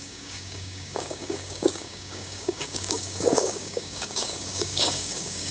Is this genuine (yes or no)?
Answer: no